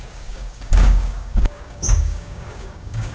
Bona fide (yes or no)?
no